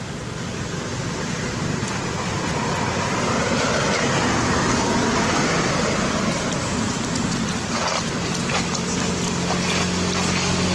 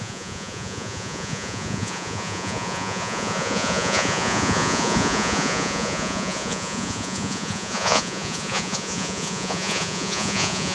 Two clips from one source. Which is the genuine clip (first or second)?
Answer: first